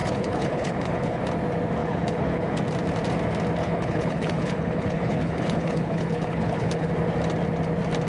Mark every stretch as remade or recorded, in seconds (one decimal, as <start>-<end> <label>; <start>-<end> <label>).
0.0-1.2 remade; 1.2-1.8 recorded; 1.8-2.6 remade; 2.6-3.6 recorded; 3.6-6.9 remade; 6.9-8.1 recorded